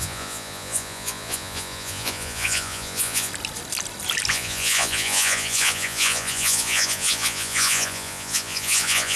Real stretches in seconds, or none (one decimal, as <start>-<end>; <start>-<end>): 3.3-4.3